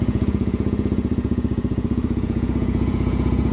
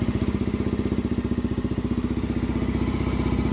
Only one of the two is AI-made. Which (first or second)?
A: first